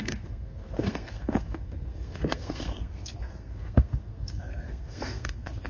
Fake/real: fake